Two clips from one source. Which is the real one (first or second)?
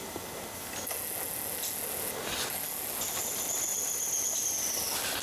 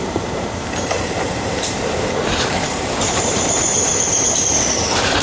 first